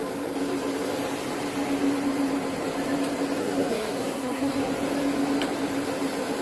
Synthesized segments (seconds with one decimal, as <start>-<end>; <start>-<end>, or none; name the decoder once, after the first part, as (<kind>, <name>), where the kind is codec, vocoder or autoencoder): 3.4-4.7 (codec, SNAC)